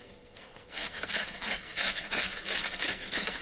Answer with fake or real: fake